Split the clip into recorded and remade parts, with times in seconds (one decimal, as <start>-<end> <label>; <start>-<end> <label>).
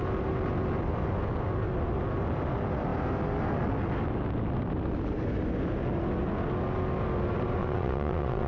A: 0.0-7.6 recorded; 7.6-8.5 remade